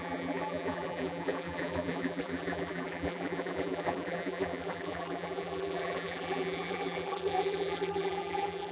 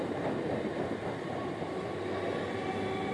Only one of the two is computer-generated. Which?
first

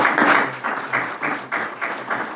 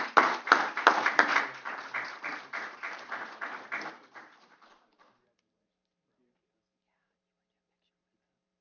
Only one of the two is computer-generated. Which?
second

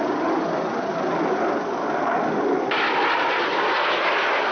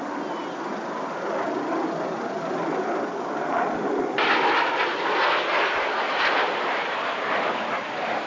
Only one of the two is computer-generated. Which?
second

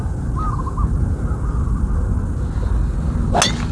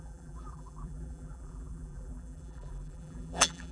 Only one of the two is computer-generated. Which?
second